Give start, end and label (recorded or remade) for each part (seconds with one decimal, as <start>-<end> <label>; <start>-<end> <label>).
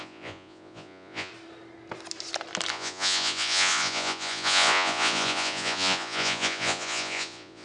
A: 0.0-1.3 remade; 1.3-2.7 recorded; 2.7-7.6 remade